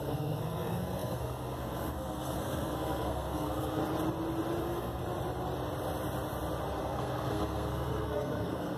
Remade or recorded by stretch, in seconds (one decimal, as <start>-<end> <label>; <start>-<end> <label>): 0.0-3.8 remade; 3.8-4.6 recorded; 4.6-5.0 remade; 5.0-6.8 recorded; 6.8-8.8 remade

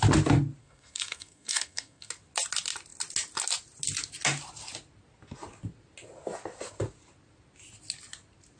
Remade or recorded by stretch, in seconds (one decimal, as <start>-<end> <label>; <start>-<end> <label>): 0.0-0.6 recorded; 0.6-2.1 remade; 2.1-8.6 recorded